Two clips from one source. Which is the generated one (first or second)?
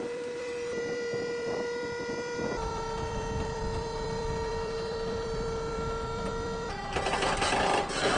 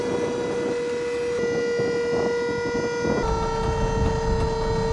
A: first